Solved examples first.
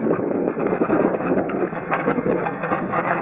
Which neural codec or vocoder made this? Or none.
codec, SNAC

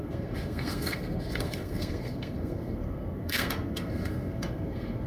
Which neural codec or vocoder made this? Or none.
codec, SNAC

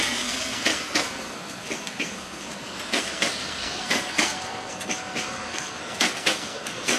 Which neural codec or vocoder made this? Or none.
codec, SNAC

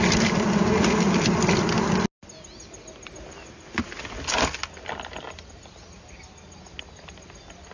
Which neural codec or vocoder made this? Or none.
none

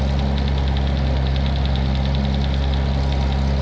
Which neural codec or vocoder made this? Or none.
none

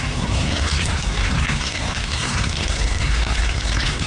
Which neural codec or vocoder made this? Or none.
codec, SNAC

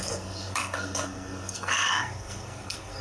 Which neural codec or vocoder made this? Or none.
codec, SNAC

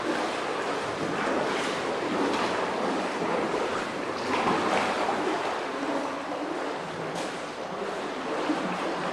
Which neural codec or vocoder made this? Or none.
none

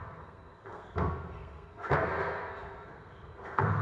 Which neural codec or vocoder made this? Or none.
codec, SNAC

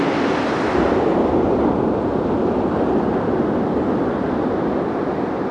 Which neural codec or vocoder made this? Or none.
none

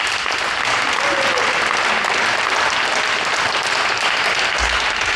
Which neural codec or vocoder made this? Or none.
none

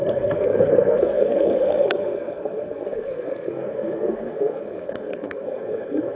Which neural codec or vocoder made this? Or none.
codec, SNAC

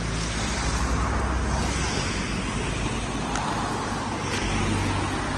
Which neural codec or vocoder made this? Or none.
none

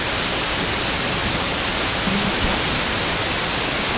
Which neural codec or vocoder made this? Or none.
none